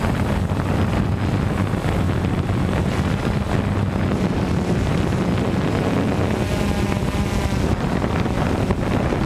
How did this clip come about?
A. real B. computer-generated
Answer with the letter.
A